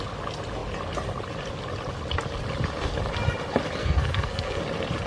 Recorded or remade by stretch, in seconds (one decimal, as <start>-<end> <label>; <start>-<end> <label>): 0.0-3.8 recorded; 3.8-4.6 remade; 4.6-5.1 recorded